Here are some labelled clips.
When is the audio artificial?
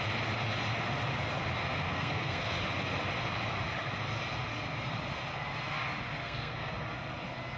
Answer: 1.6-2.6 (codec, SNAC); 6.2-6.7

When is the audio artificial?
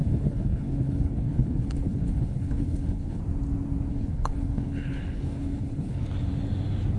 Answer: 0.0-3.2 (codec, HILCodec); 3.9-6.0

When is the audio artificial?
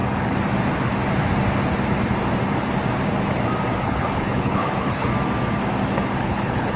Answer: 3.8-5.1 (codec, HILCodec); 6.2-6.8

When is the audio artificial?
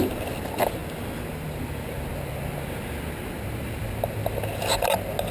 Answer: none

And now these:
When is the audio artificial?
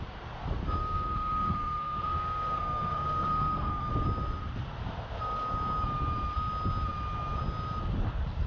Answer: 0.8-3.9 (codec, SNAC)